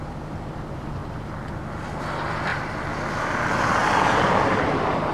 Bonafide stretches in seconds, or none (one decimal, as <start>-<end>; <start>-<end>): 2.5-3.3; 3.8-4.3

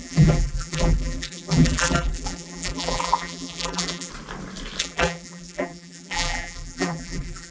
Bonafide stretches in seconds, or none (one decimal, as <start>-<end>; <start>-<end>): 4.1-4.8

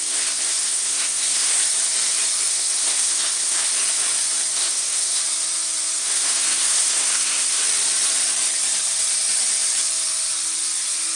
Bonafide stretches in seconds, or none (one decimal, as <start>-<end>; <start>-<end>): 1.6-2.5; 3.7-4.5; 5.2-6.0; 7.6-11.2

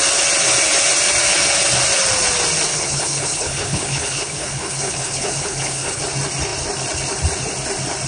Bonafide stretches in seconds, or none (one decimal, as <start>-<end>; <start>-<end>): 0.0-2.7; 6.0-8.1

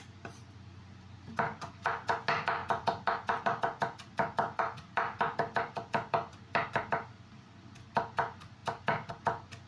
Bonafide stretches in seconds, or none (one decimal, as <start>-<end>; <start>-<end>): 0.0-2.6; 7.5-8.6; 9.1-9.7